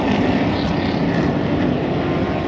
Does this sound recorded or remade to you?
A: recorded